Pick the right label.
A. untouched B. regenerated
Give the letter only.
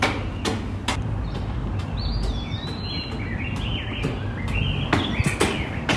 A